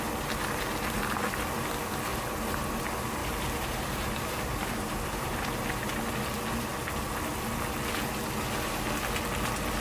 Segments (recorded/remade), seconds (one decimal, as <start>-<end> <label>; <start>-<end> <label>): 0.0-2.1 recorded; 2.1-2.7 remade; 2.7-3.2 recorded; 3.2-5.6 remade; 5.6-9.8 recorded